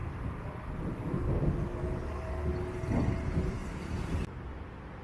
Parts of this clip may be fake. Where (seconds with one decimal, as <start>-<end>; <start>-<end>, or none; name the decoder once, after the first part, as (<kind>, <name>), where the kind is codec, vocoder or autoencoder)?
3.6-4.1 (vocoder, BigVGAN v2)